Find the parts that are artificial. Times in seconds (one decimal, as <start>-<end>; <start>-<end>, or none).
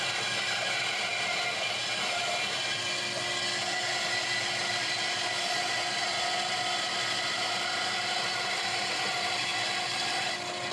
none